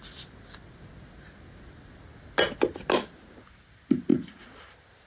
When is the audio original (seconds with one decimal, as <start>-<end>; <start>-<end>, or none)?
0.0-5.1